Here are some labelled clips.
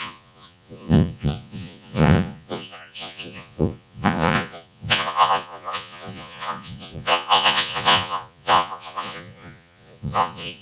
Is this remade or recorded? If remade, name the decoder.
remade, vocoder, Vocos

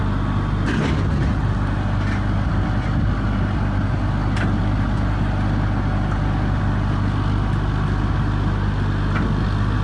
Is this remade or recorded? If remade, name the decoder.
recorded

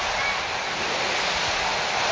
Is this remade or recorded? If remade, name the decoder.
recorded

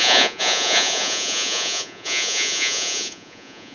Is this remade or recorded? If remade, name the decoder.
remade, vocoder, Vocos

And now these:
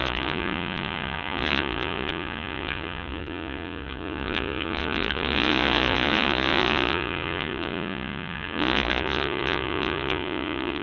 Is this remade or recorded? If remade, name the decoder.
remade, vocoder, Vocos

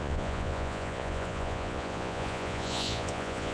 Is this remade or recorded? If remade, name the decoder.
remade, vocoder, Vocos